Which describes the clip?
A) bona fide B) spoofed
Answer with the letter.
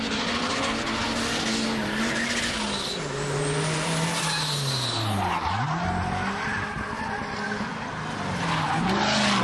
A